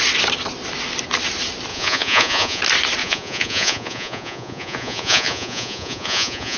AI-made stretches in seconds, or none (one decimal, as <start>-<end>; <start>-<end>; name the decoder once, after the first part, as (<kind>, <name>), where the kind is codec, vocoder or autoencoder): 1.7-2.6 (vocoder, Vocos); 3.0-6.6